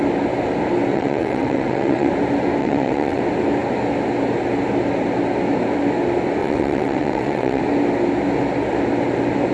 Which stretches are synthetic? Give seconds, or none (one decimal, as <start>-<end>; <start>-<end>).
0.9-2.1; 2.6-3.2; 6.4-7.6